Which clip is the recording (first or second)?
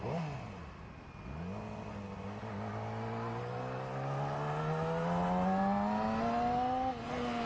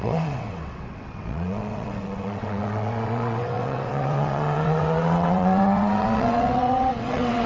first